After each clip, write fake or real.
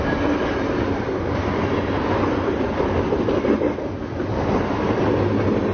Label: real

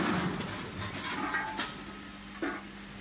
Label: real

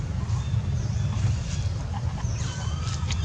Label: real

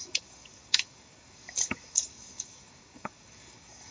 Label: fake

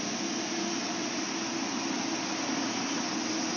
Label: real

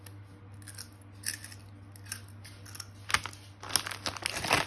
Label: real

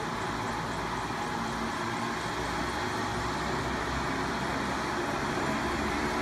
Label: real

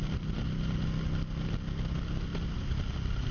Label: real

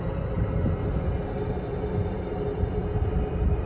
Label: real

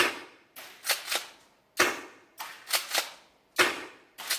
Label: real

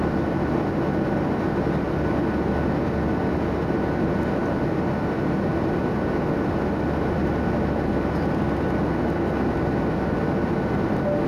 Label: real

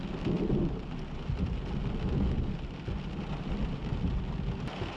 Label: real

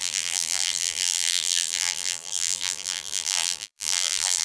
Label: fake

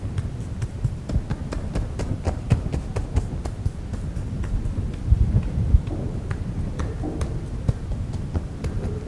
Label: real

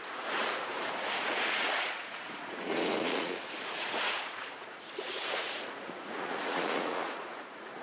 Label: fake